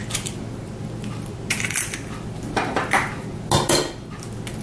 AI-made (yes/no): no